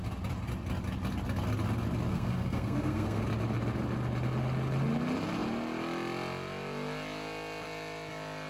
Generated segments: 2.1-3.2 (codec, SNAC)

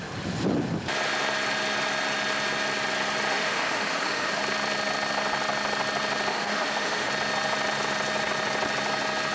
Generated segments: 3.3-4.4 (autoencoder, DAC-VAE); 6.3-7.1